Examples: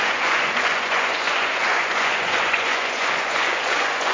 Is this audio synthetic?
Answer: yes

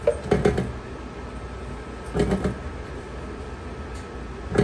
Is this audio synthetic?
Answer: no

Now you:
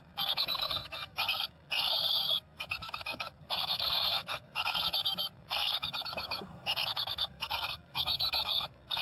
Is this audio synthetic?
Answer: yes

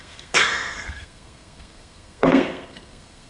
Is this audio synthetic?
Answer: yes